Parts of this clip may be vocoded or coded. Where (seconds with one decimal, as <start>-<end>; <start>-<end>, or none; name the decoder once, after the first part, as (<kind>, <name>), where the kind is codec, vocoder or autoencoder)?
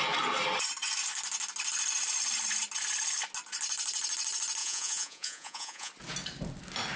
4.6-5.9 (vocoder, Vocos)